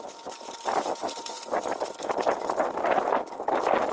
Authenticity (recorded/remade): recorded